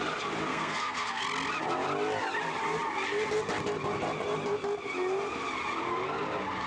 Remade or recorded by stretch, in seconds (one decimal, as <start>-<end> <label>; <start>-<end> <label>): 0.0-0.5 recorded; 0.5-1.2 remade; 1.2-6.7 recorded

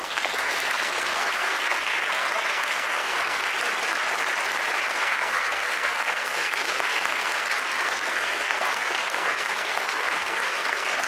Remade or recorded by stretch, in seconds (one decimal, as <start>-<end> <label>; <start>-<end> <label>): 0.0-3.5 remade; 3.5-4.9 recorded; 4.9-11.1 remade

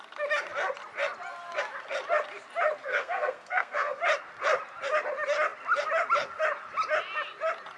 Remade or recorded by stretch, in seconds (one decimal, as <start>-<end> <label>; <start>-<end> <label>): 0.0-2.8 recorded; 2.8-4.0 remade; 4.0-7.8 recorded